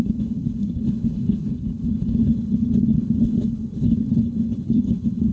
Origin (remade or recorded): remade